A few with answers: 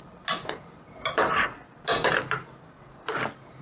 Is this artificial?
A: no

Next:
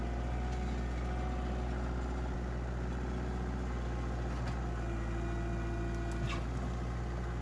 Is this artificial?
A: no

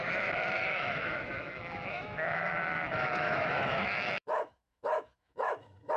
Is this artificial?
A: yes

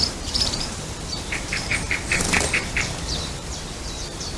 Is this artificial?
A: yes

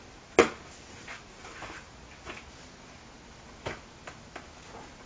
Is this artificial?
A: no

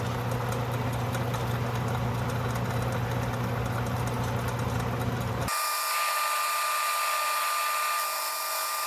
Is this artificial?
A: no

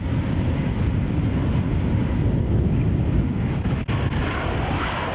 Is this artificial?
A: no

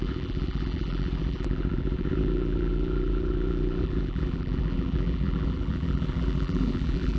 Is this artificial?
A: yes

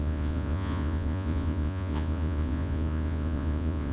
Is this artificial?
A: yes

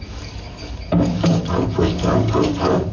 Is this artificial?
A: yes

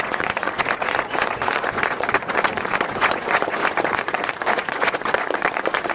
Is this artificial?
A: yes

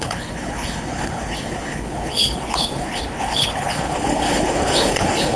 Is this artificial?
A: yes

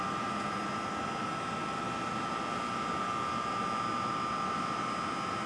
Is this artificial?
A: no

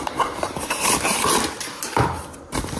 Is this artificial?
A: yes